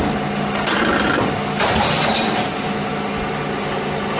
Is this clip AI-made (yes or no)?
no